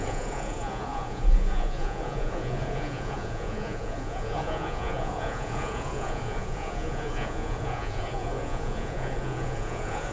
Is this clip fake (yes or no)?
yes